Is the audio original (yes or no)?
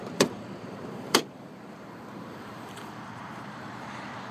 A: no